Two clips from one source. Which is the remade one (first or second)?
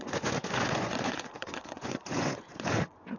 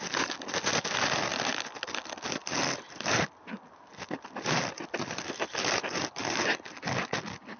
first